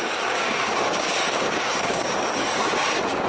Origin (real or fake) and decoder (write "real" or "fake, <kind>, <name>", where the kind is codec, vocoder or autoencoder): fake, codec, DAC